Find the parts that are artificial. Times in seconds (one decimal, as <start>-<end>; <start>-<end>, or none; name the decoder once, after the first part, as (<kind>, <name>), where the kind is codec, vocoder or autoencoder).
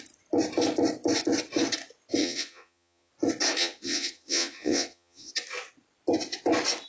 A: 2.2-3.1 (vocoder, Vocos); 3.6-5.3